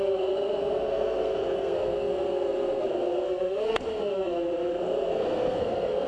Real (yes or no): no